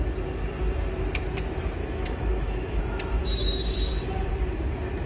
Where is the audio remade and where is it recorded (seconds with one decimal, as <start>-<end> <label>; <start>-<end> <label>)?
0.0-1.8 recorded; 1.8-2.8 remade; 2.8-3.2 recorded; 3.2-4.3 remade; 4.3-5.1 recorded